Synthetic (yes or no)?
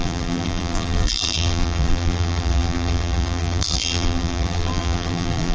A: yes